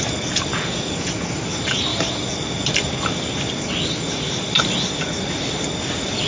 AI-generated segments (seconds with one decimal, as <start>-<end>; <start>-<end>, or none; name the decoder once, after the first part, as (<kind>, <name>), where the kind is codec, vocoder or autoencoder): 0.5-1.3 (vocoder, Vocos)